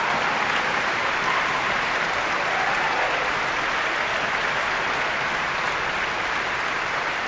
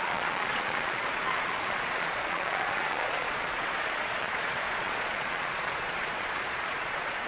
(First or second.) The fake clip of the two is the second